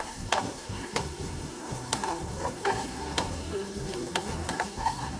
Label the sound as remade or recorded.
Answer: remade